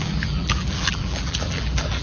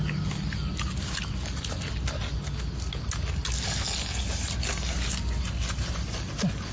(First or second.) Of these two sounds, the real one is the second